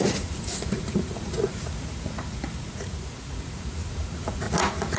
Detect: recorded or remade remade